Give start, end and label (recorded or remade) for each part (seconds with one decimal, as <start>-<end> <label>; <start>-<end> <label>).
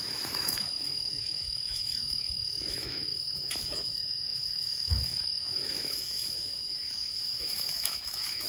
0.0-8.5 remade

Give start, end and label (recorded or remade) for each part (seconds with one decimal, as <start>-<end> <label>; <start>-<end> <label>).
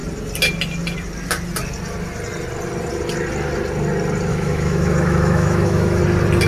0.0-4.3 recorded; 4.3-6.0 remade; 6.0-6.5 recorded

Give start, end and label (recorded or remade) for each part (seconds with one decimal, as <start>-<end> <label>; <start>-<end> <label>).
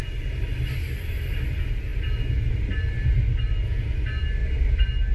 0.0-5.1 recorded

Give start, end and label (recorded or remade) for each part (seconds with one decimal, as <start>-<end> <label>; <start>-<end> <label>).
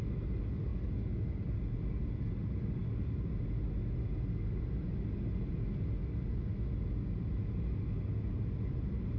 0.0-9.2 recorded